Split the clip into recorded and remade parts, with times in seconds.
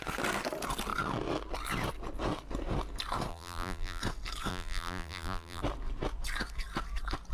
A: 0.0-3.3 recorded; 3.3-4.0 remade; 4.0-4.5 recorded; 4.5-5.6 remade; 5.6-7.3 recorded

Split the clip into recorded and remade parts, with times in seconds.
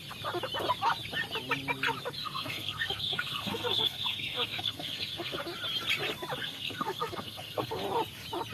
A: 0.0-2.2 recorded; 2.2-5.4 remade; 5.4-6.4 recorded; 6.4-7.8 remade; 7.8-8.5 recorded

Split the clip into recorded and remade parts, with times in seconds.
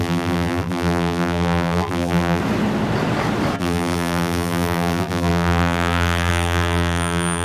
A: 0.0-2.4 remade; 2.4-3.6 recorded; 3.6-7.4 remade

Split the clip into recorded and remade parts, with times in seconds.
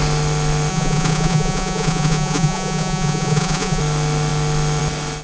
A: 0.0-0.7 recorded; 0.7-3.8 remade; 3.8-5.2 recorded